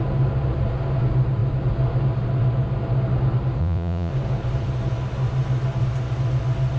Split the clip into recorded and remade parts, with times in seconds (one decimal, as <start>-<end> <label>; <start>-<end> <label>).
0.0-3.6 recorded; 3.6-4.1 remade; 4.1-6.8 recorded